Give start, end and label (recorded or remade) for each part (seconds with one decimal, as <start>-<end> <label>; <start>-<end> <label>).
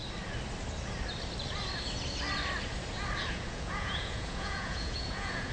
0.0-3.3 recorded; 3.3-5.5 remade